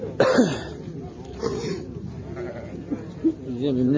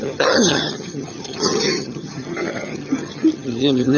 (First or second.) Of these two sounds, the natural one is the first